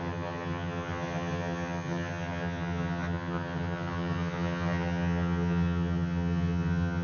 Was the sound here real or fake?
fake